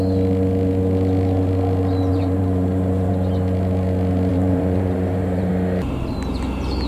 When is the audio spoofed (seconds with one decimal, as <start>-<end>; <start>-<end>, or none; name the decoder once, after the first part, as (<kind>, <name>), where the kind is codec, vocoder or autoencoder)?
2.1-3.1 (vocoder, BigVGAN v2); 4.3-5.5